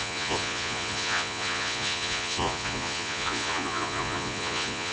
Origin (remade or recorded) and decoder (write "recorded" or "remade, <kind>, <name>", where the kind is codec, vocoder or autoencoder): remade, vocoder, Vocos